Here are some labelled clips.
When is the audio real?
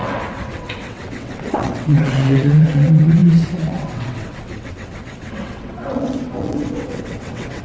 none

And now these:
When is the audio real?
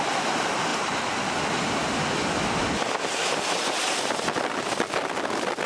0.0-5.7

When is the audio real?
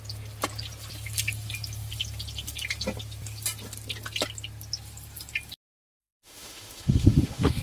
0.0-6.0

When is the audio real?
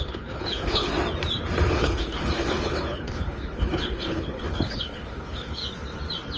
0.9-1.7; 5.6-6.4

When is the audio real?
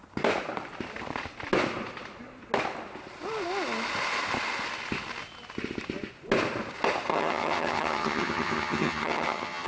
0.0-7.1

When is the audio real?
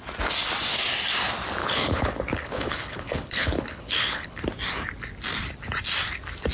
0.0-1.6; 4.4-6.5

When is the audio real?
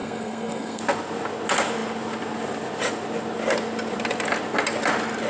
0.8-5.3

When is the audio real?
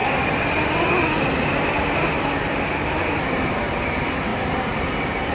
0.0-5.3